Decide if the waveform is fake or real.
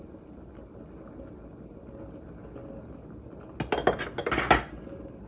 real